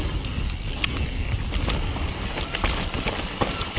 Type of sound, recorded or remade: recorded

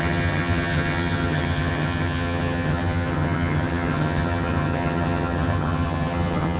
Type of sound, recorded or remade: remade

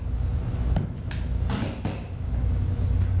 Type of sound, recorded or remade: recorded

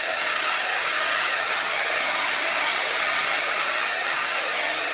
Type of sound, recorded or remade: remade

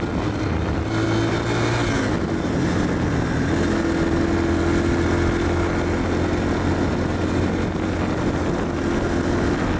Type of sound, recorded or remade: recorded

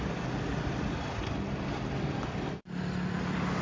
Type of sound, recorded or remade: recorded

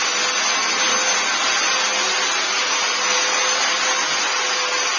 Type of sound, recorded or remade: recorded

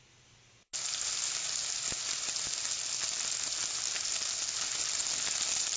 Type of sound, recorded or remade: recorded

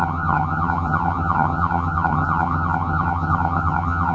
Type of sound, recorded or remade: remade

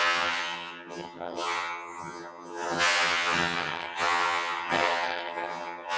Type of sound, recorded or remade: remade